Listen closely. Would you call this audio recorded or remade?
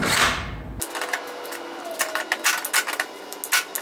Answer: recorded